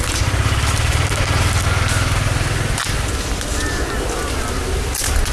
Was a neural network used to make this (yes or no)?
no